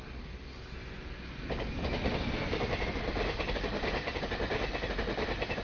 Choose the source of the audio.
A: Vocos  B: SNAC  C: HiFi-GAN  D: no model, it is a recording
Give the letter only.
D